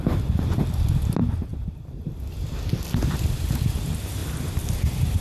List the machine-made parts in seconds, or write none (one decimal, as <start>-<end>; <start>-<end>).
none